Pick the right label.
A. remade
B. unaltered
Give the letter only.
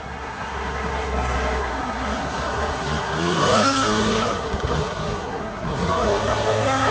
A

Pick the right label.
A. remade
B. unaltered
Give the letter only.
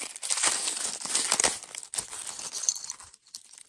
B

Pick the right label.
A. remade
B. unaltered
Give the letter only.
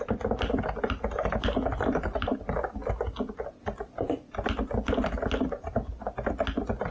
B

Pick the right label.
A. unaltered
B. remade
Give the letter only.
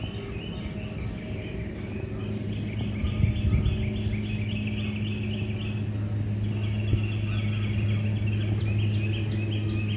A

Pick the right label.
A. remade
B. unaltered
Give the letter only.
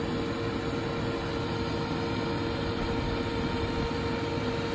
B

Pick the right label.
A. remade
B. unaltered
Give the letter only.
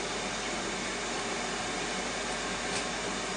B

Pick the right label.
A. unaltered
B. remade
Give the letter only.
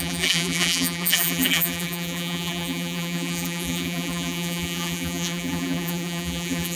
B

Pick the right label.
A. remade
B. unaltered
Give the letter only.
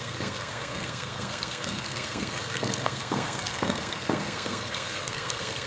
A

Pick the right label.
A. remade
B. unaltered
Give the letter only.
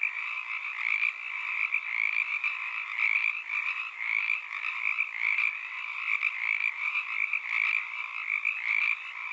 B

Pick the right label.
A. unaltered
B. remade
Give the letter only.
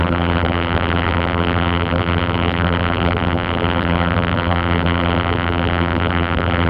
B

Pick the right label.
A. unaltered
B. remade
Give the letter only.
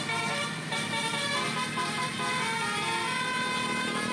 A